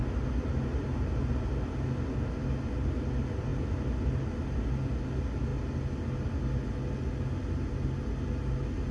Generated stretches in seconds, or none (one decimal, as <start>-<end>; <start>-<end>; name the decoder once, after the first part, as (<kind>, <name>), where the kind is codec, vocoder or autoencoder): none